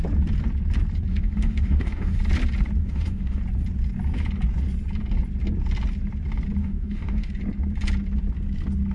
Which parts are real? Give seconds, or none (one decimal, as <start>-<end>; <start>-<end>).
0.0-1.1; 2.2-2.8; 3.4-6.6; 7.3-8.9